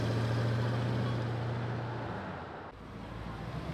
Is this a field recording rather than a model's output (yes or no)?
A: yes